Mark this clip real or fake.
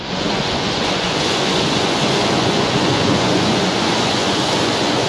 fake